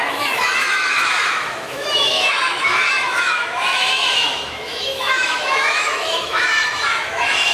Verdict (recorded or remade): remade